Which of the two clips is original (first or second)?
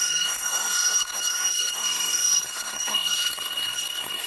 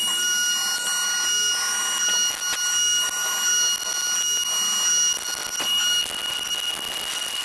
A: second